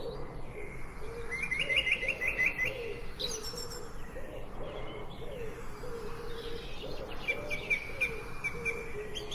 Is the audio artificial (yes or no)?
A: no